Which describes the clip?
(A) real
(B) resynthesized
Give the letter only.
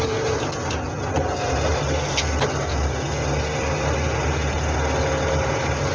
A